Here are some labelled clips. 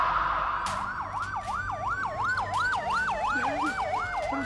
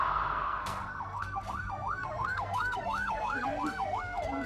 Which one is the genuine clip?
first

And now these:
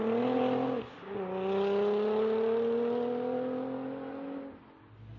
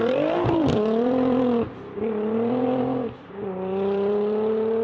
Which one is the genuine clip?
first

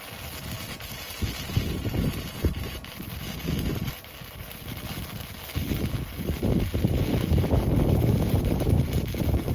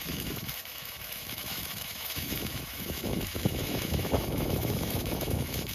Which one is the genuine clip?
first